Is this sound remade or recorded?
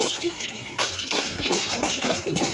remade